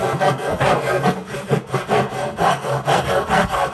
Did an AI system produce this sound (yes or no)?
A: yes